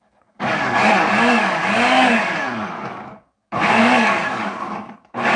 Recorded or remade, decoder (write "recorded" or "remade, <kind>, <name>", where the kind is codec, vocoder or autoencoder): remade, codec, DAC